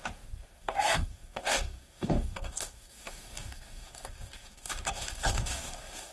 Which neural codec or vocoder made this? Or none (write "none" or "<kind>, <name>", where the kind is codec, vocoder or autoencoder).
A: codec, DAC